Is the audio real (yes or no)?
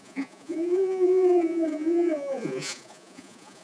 no